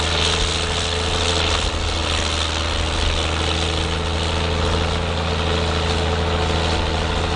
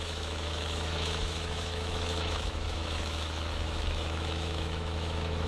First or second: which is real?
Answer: first